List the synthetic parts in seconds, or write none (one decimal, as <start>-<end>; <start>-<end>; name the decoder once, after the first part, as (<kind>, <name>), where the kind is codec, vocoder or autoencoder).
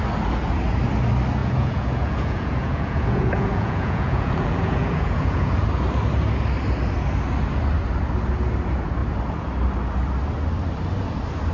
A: 1.4-5.5 (vocoder, Vocos)